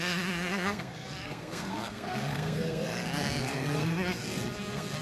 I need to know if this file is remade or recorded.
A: remade